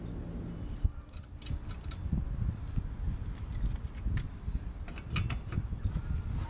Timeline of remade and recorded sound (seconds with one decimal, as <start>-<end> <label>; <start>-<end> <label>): 0.0-6.5 recorded